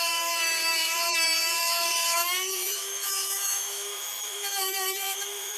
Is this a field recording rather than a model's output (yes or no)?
no